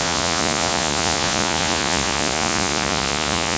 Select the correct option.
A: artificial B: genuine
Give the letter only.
A